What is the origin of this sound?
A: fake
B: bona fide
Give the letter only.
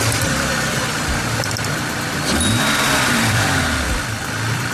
A